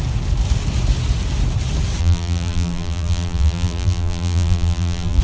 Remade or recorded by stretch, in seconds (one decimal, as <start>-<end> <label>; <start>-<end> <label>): 0.0-2.0 recorded; 2.0-5.2 remade